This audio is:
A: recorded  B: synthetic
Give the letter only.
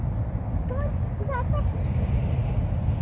A